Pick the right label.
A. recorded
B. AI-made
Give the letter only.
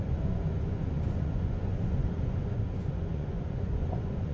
B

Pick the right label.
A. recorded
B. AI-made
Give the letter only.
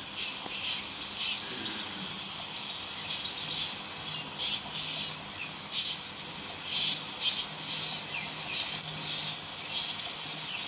A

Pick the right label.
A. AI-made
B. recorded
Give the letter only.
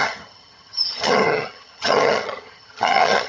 A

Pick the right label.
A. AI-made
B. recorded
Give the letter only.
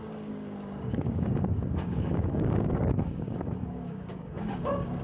A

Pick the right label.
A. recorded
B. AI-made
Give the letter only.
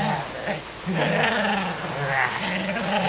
A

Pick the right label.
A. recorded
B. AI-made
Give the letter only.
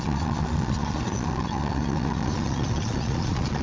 B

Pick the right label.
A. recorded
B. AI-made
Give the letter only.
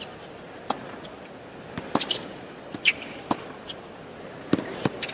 A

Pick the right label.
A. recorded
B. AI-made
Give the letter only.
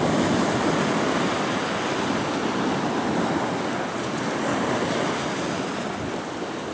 A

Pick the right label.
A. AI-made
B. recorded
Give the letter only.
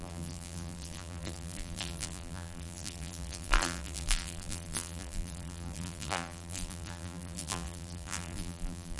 A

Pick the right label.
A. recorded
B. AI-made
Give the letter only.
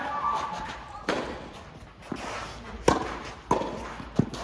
A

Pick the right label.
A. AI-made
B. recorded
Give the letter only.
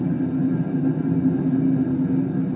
B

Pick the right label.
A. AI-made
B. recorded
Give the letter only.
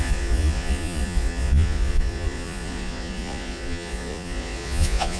A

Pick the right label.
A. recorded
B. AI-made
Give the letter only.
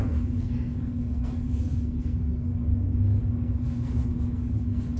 B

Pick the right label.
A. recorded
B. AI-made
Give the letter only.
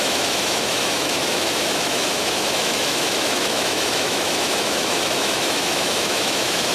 B